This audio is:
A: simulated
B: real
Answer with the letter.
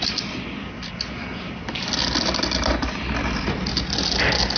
B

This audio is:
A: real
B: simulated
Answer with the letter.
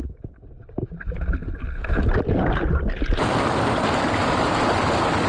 A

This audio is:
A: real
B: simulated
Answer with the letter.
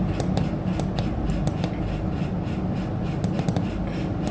A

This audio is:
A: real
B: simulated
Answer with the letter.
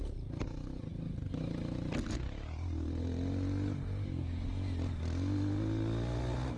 A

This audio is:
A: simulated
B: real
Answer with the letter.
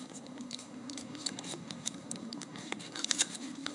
A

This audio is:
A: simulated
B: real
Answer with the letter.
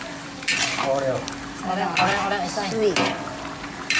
A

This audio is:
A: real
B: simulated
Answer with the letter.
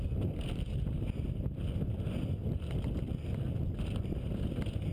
A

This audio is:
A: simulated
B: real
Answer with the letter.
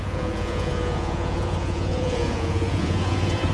A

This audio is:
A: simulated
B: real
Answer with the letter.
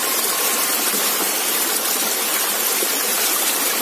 B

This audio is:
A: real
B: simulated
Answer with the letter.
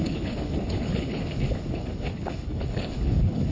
B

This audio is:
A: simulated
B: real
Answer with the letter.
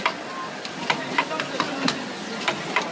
B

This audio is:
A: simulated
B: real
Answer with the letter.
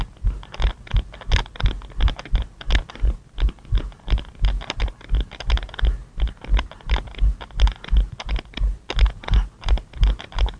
B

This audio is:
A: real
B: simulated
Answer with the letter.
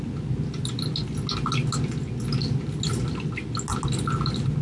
A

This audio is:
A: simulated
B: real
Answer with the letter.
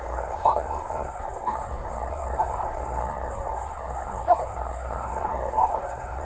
A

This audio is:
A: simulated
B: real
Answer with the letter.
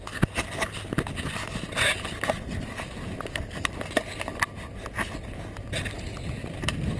B